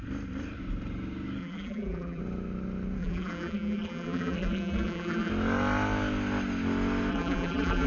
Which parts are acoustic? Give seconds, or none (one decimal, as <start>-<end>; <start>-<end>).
0.0-1.4; 2.2-3.0; 5.3-7.1